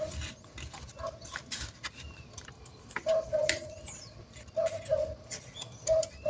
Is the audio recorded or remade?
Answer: recorded